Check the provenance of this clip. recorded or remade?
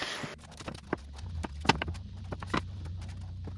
recorded